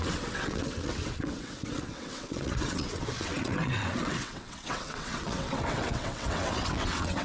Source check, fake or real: fake